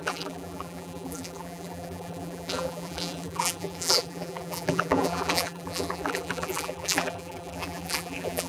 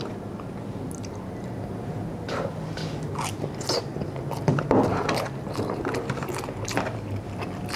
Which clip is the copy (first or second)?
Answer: first